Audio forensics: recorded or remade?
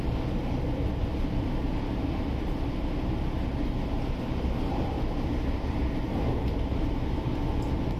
recorded